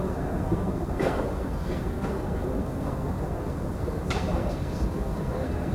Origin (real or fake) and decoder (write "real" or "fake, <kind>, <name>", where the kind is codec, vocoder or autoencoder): fake, codec, SNAC